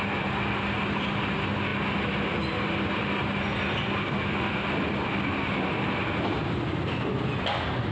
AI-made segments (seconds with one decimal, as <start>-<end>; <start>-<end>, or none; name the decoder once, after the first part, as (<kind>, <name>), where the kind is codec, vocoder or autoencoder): none